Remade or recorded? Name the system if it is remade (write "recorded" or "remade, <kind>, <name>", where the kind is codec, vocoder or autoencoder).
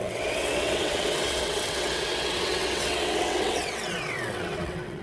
remade, vocoder, WaveNeXt